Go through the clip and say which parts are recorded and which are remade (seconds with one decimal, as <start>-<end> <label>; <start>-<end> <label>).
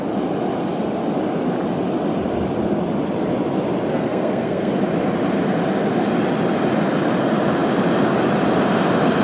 0.0-3.9 recorded; 3.9-4.7 remade; 4.7-9.2 recorded